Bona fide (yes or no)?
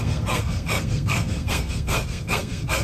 no